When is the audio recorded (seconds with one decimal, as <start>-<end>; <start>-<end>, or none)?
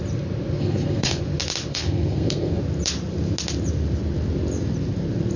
0.0-0.6; 1.2-1.7; 2.6-5.4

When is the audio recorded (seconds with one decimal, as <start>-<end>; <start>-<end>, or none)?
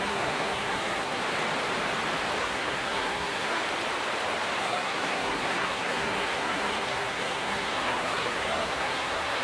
1.2-2.4; 3.6-4.6